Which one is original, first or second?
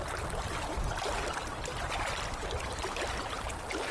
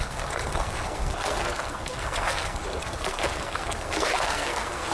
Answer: first